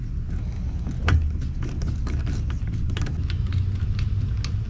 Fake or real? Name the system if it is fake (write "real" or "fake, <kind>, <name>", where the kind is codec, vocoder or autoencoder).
real